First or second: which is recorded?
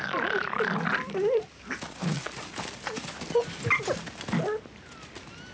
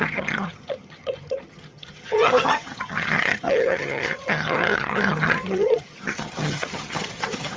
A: first